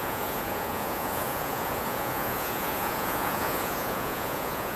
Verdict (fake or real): fake